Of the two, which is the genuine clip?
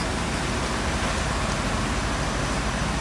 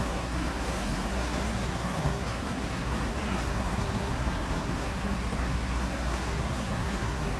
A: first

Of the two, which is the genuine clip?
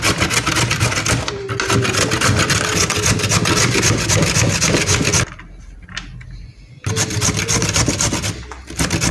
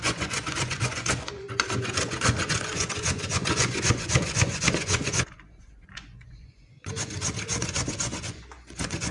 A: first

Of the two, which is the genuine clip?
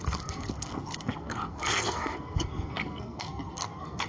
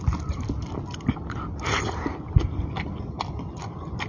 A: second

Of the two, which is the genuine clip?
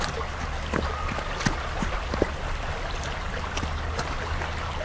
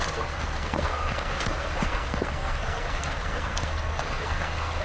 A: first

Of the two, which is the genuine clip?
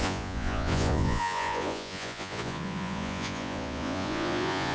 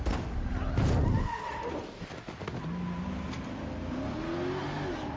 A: second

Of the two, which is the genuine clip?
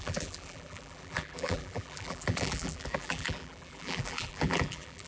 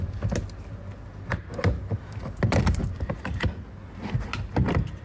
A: second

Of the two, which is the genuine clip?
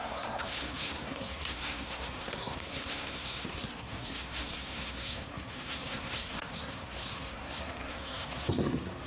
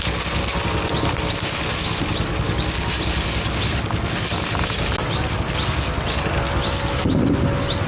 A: second